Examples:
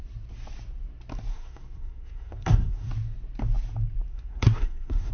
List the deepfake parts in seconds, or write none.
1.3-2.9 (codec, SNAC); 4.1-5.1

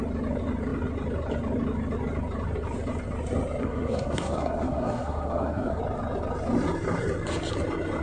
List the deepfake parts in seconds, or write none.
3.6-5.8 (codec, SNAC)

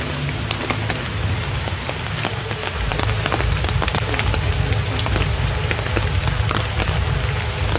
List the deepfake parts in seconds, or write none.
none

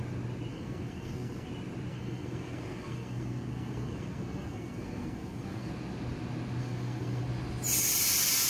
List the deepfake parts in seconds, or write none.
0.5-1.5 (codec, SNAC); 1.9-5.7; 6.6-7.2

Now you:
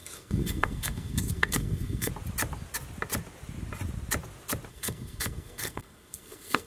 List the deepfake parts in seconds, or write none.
0.0-2.1 (codec, SNAC); 4.7-6.7